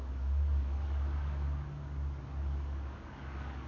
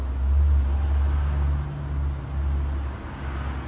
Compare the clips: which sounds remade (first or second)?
first